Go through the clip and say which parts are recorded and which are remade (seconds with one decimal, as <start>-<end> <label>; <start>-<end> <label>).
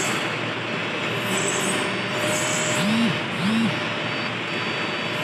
0.0-5.2 recorded